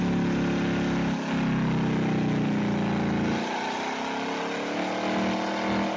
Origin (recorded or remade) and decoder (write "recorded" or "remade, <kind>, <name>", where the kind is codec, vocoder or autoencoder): recorded